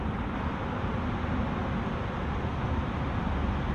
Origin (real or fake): real